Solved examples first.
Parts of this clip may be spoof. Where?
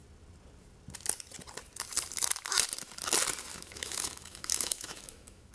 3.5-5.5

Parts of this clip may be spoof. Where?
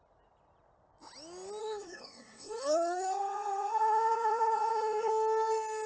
1.6-5.1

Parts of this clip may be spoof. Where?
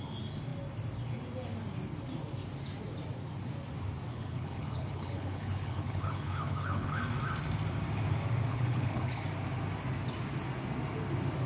4.1-7.0; 8.5-9.2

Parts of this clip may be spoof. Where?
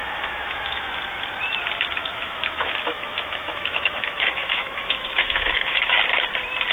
0.0-0.9; 2.0-6.0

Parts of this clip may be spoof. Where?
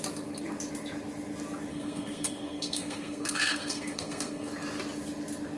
1.7-4.5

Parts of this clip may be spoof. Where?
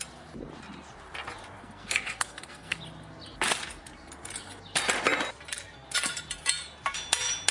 1.6-2.8